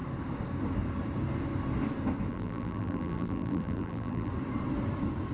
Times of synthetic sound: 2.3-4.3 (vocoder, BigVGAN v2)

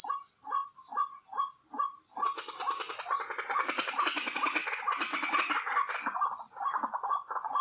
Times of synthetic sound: 5.1-5.6 (vocoder, BigVGAN v2)

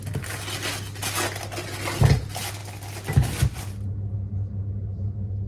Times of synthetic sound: none

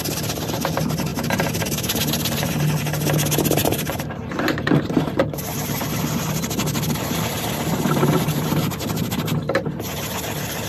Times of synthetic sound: 1.1-2.5 (vocoder, BigVGAN v2); 3.6-5.9

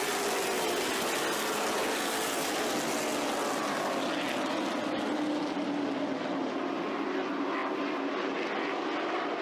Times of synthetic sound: none